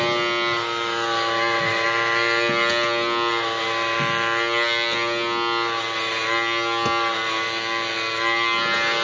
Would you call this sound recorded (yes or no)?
yes